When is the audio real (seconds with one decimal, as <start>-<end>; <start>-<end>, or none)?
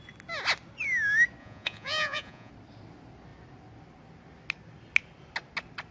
0.0-1.4; 2.5-5.9